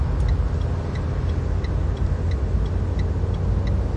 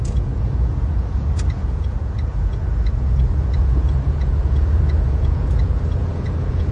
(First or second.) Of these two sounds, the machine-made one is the second